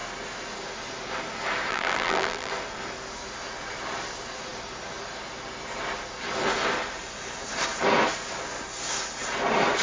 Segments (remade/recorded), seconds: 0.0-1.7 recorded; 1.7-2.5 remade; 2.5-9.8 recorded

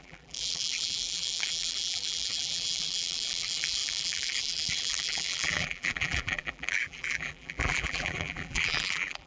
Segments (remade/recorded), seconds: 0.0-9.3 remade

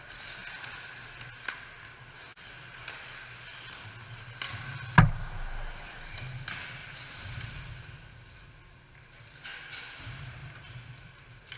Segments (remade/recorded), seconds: 0.0-2.3 recorded; 2.3-2.9 remade; 2.9-6.8 recorded; 6.8-7.7 remade; 7.7-10.4 recorded; 10.4-11.1 remade; 11.1-11.6 recorded